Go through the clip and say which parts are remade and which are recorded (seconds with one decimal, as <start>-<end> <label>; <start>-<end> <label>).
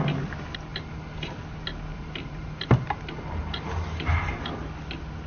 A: 0.0-0.7 recorded; 0.7-1.3 remade; 1.3-1.9 recorded; 1.9-4.4 remade; 4.4-5.3 recorded